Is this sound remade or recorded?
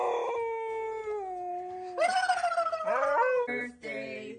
recorded